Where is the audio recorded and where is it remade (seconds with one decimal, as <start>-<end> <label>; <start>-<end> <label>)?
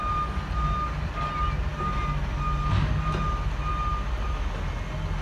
0.0-5.2 recorded